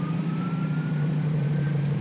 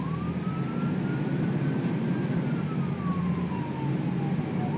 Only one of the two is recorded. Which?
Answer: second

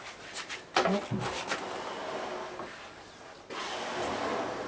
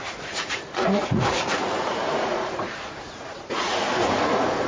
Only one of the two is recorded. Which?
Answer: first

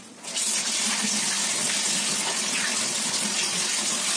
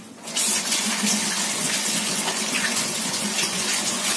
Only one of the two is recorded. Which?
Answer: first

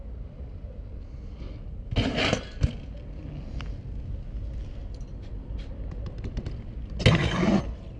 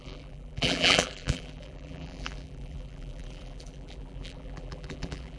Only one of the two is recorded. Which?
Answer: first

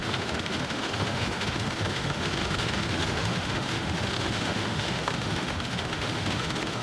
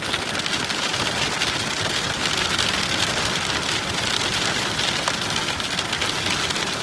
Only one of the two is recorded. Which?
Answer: second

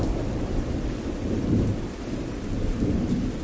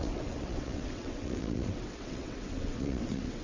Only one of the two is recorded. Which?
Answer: first